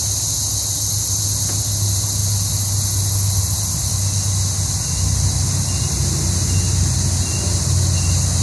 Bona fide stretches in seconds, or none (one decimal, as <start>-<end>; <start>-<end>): 0.0-8.4